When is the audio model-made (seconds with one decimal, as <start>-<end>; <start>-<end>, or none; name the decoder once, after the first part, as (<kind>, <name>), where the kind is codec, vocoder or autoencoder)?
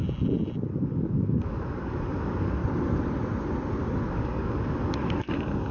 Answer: 0.7-2.6 (codec, DAC); 4.1-5.7